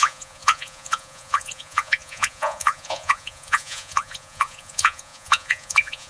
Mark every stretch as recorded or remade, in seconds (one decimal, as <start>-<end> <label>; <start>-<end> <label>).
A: 0.0-6.1 remade